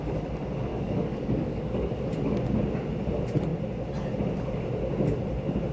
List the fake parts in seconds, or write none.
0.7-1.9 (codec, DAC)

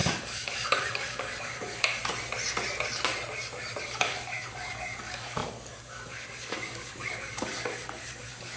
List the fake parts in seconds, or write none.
0.0-2.0 (codec, DAC); 3.8-8.6

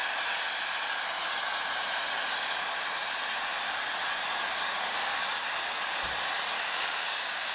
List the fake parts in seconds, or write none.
4.5-5.2 (codec, DAC); 6.6-7.5

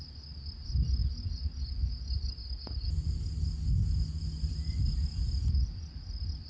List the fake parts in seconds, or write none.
none

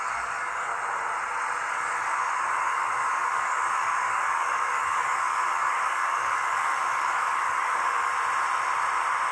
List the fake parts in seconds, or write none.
0.0-0.7 (codec, DAC); 1.7-8.1

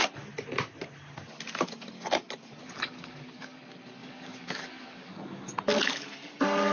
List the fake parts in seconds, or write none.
2.6-3.6 (codec, DAC); 4.0-5.5

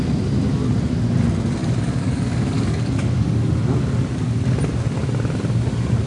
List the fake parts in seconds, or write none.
1.6-3.5 (codec, DAC)